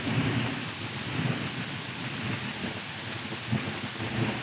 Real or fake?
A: real